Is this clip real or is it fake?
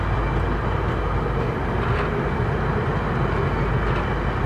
real